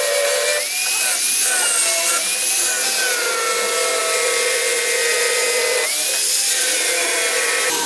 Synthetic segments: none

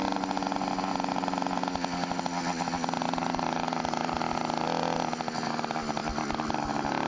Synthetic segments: none